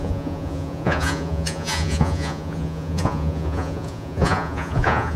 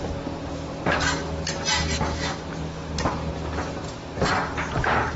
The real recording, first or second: second